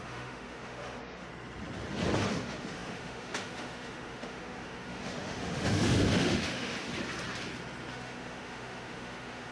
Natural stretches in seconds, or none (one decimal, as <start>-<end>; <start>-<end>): 1.3-2.3; 6.9-7.9